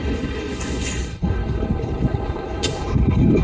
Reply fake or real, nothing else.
fake